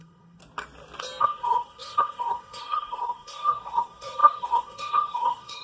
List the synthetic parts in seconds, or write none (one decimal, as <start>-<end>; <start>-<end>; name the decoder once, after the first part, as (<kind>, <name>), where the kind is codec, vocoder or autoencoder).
0.0-0.4 (codec, SNAC); 1.2-5.6